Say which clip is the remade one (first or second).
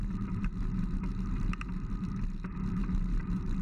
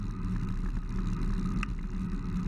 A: first